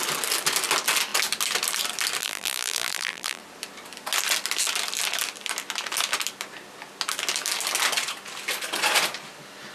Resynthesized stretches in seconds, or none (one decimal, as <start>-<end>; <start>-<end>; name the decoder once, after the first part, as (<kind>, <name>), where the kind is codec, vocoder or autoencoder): 2.2-3.4 (vocoder, BigVGAN v2)